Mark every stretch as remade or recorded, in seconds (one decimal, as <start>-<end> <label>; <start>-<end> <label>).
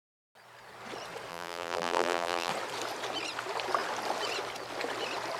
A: 0.0-1.3 recorded; 1.3-2.5 remade; 2.5-5.4 recorded